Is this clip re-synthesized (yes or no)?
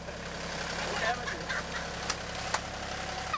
no